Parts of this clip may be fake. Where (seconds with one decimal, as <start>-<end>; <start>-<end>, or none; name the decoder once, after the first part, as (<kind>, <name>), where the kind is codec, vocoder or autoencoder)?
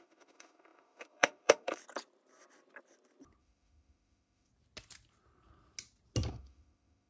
0.0-1.8 (autoencoder, DAC-VAE); 3.4-4.5; 6.3-7.1